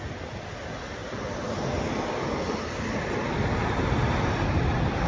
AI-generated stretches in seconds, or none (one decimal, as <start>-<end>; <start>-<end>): none

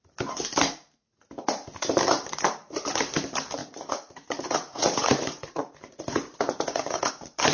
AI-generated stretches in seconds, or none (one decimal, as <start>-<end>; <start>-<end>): 3.6-7.1

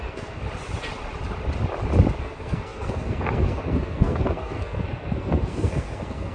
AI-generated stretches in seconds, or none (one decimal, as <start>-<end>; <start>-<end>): 0.0-0.4; 2.2-6.3

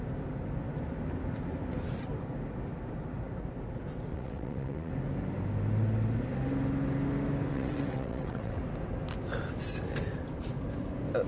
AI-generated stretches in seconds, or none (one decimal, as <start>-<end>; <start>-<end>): 4.1-4.9; 7.5-8.6

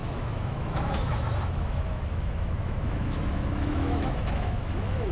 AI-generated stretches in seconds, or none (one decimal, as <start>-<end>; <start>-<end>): 0.0-5.1